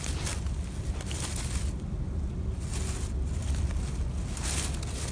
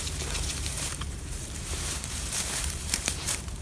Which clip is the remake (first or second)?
second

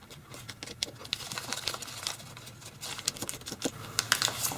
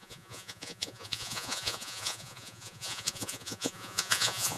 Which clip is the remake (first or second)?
second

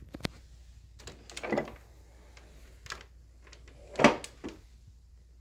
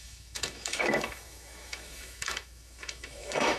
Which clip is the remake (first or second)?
second